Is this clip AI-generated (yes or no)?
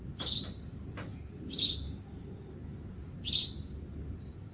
no